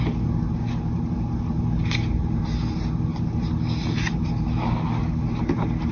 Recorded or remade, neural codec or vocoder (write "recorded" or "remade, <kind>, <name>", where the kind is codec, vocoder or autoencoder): recorded